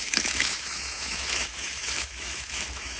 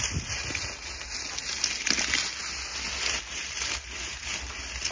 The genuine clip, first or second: second